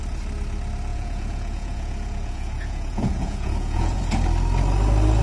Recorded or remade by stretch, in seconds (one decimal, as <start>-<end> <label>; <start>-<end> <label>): 0.0-0.9 recorded; 0.9-4.0 remade; 4.0-5.2 recorded